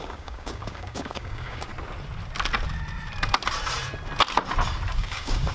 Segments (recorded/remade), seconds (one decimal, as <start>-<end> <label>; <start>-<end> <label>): 0.0-1.7 remade; 1.7-5.0 recorded; 5.0-5.5 remade